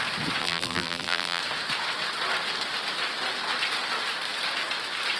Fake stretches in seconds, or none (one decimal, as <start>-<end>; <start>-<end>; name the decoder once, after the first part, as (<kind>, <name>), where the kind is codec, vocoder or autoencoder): 0.4-1.4 (vocoder, BigVGAN v2)